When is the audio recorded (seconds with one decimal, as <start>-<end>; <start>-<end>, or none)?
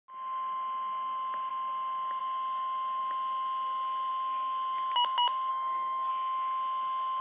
0.0-5.5; 6.1-7.2